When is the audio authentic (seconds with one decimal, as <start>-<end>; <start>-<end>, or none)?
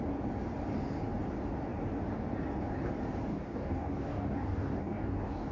0.0-3.3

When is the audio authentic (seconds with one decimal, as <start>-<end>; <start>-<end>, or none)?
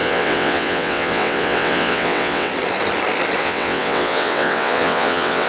2.5-3.4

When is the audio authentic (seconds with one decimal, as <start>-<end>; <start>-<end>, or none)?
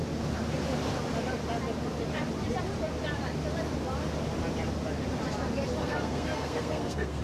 0.0-5.8